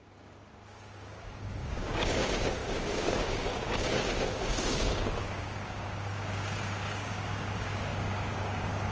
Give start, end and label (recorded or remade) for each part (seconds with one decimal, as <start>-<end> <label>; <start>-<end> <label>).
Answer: 0.0-8.9 remade